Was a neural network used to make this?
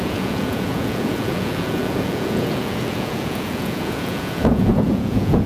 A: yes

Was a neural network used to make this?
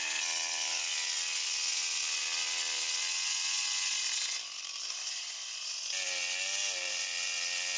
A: no